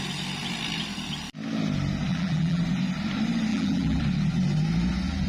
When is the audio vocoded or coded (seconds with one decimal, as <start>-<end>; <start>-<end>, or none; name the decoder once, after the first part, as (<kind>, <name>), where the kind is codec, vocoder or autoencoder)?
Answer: 2.1-2.6 (vocoder, BigVGAN v2); 3.5-4.0